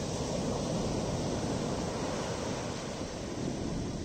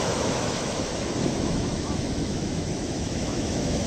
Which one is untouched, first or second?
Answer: first